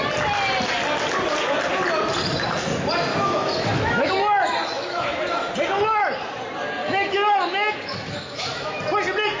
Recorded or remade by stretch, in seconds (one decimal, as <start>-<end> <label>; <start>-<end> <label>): 0.0-3.1 recorded; 3.1-4.1 remade; 4.1-4.6 recorded; 4.6-5.5 remade; 5.5-6.8 recorded; 6.8-8.8 remade; 8.8-9.4 recorded